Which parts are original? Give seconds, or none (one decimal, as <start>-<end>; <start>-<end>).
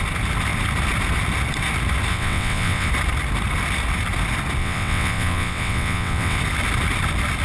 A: 0.0-2.1; 2.9-4.6; 6.4-7.4